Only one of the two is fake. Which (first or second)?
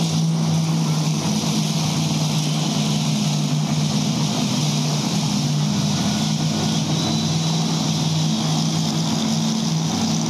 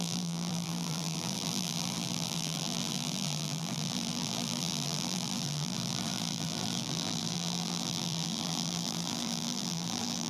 second